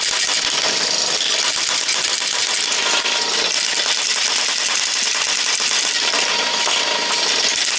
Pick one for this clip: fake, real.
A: real